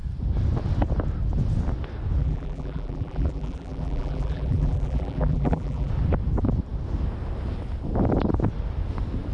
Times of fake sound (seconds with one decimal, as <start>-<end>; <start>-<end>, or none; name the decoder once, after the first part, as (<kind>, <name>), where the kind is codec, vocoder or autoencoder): 2.2-5.9 (vocoder, BigVGAN v2)